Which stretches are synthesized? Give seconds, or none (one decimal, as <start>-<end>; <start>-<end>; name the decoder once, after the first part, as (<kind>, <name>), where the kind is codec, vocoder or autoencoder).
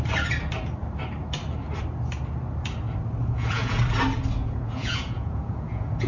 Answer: 3.2-3.8 (vocoder, Vocos); 4.4-6.1